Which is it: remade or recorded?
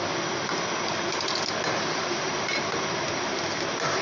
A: recorded